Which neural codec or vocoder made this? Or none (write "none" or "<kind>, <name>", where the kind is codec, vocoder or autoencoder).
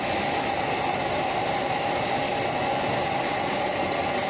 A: none